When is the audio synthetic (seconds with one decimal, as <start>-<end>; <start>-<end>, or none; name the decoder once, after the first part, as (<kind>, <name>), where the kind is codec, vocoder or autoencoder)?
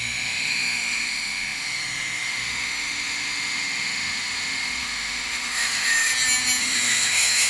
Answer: 0.0-6.1 (autoencoder, DAC-VAE); 6.6-7.5